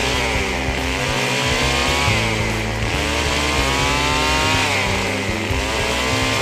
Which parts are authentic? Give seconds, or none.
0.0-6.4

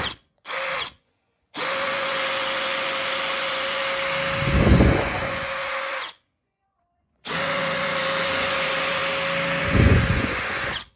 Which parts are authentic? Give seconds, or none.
3.8-4.6; 9.0-9.6

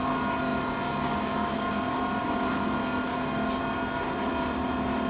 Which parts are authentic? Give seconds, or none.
0.0-5.1